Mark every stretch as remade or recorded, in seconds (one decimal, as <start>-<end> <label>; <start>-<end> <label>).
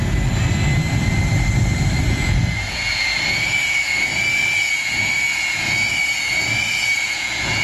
0.0-2.1 recorded; 2.1-7.6 remade